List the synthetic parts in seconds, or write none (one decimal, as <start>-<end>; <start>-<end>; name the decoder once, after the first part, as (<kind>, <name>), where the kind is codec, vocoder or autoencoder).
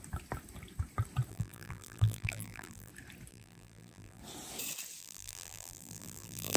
1.3-2.9 (vocoder, BigVGAN v2); 3.3-4.2; 5.0-6.6